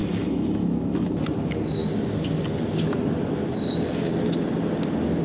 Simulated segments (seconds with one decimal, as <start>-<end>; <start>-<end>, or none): 0.0-1.1